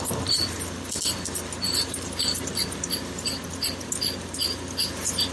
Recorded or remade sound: recorded